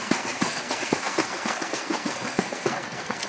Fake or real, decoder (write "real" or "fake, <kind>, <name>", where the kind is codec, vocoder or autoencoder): fake, codec, SNAC